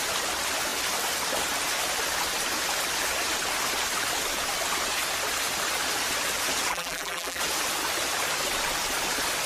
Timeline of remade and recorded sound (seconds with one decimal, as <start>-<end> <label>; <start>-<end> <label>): 0.0-6.7 recorded; 6.7-7.4 remade; 7.4-9.5 recorded